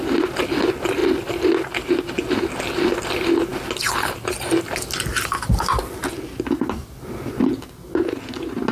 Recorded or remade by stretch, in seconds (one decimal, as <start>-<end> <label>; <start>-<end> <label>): 0.0-8.7 recorded